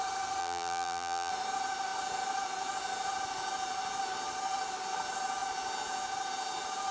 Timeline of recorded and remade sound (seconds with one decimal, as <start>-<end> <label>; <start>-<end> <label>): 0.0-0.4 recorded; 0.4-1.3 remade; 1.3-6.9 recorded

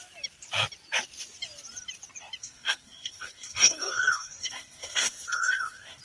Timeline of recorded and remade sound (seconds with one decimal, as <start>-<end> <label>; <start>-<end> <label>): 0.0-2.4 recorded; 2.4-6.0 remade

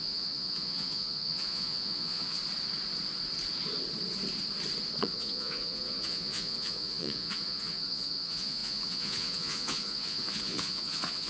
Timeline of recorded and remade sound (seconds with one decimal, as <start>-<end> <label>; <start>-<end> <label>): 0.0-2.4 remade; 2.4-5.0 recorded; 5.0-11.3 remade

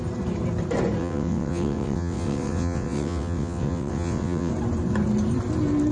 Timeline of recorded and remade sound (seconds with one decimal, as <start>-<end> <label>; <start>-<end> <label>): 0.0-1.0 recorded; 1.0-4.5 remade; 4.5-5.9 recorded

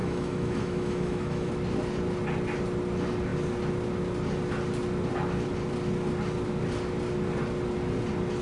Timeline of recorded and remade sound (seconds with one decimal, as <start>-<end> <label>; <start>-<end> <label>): 0.0-1.5 remade; 1.5-8.4 recorded